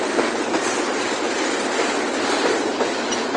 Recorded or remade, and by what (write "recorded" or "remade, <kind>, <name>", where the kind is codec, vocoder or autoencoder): recorded